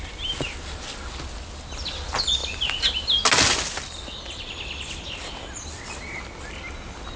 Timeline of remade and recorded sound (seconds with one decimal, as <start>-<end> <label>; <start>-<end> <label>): 0.0-7.2 recorded